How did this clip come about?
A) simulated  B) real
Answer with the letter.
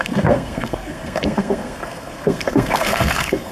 A